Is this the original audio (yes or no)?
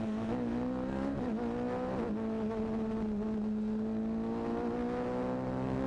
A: yes